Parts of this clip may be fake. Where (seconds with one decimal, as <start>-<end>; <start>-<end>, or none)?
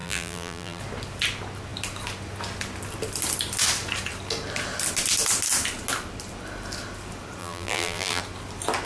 0.0-0.8; 7.4-8.2